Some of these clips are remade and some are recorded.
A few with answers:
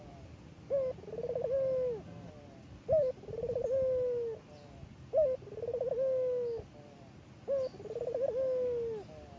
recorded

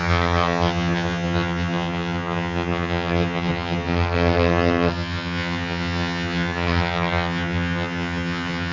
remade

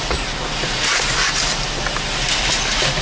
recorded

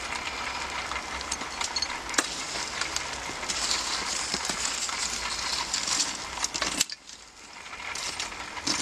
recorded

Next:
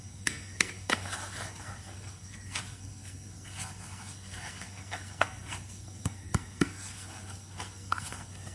remade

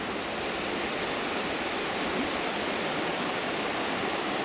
recorded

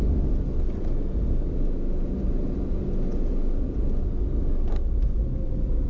recorded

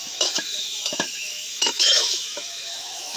remade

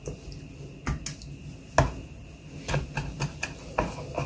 recorded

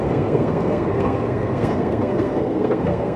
remade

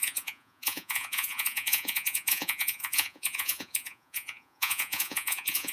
remade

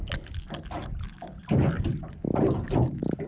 recorded